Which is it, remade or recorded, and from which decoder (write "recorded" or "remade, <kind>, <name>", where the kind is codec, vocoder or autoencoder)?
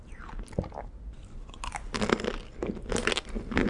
recorded